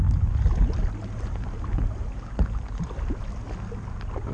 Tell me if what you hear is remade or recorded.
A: recorded